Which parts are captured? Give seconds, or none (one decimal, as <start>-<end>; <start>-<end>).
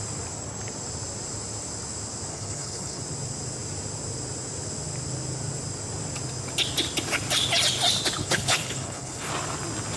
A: 0.0-2.3; 3.0-8.2; 9.3-10.0